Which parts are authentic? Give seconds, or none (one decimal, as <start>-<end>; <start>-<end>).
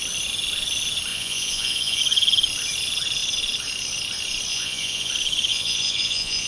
0.0-1.1; 2.0-4.5; 5.1-5.5